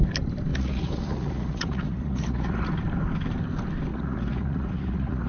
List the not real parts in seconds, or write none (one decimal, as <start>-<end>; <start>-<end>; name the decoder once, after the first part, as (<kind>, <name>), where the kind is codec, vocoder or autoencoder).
0.5-2.7 (vocoder, Vocos); 3.9-5.3